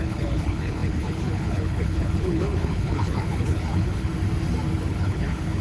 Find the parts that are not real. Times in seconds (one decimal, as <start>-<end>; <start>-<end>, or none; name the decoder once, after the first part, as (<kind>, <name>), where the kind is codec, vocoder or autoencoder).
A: 0.0-4.1 (codec, HILCodec); 4.8-5.6